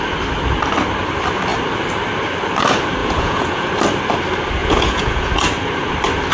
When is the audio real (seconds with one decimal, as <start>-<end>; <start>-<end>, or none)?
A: 0.0-3.0; 3.7-4.6; 5.3-6.3